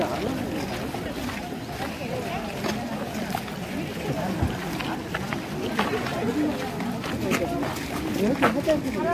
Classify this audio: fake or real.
real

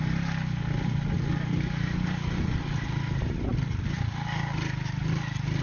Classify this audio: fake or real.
real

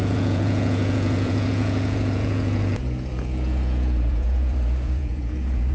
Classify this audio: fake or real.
fake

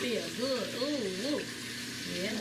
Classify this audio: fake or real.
real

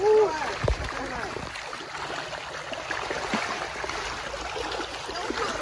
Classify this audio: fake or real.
real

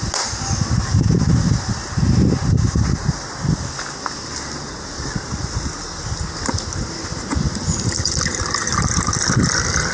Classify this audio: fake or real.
real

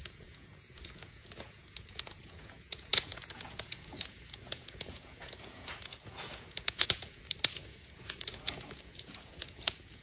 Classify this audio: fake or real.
fake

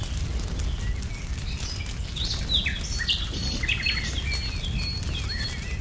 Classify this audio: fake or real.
real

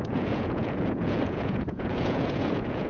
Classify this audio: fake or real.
fake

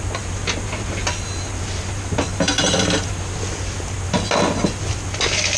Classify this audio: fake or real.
real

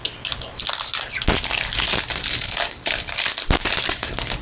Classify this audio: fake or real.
real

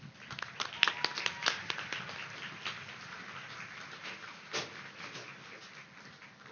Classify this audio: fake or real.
real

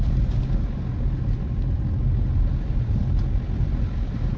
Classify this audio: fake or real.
real